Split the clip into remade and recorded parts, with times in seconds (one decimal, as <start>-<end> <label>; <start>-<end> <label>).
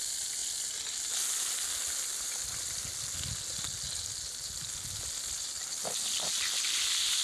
0.0-7.2 recorded